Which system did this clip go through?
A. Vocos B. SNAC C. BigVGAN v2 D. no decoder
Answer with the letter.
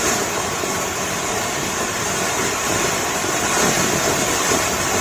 C